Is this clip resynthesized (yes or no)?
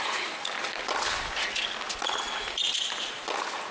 no